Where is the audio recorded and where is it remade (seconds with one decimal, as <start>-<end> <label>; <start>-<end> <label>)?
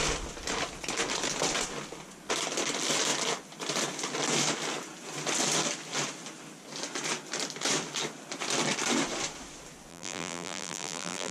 0.0-9.9 recorded; 9.9-11.3 remade